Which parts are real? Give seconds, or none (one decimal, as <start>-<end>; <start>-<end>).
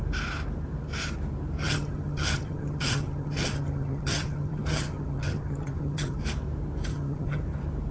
0.0-1.6; 6.2-6.9; 7.4-7.9